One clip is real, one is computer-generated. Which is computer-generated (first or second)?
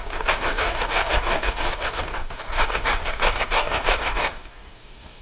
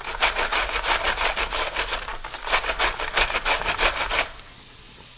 first